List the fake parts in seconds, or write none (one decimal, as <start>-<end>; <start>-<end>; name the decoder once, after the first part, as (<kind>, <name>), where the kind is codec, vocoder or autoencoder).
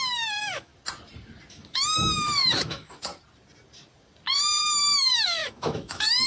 0.0-0.7 (autoencoder, DAC-VAE); 1.5-3.1; 4.6-6.3